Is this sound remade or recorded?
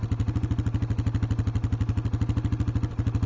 recorded